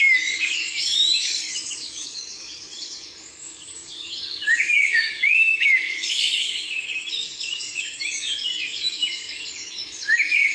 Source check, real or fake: fake